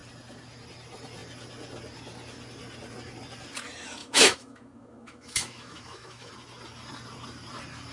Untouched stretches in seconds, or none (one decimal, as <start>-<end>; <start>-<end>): 0.0-4.0; 6.3-7.9